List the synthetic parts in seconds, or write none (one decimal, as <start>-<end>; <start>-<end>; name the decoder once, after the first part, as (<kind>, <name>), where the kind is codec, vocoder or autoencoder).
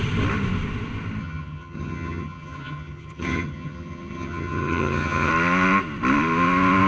1.2-5.3 (vocoder, HiFi-GAN)